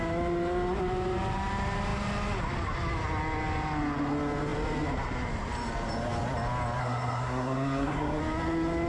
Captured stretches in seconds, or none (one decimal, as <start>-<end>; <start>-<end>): 0.0-6.8; 8.2-8.9